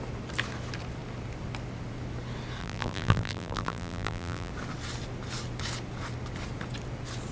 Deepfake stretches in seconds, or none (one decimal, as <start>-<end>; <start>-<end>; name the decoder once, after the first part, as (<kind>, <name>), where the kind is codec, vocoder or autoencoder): 2.6-4.5 (vocoder, BigVGAN v2)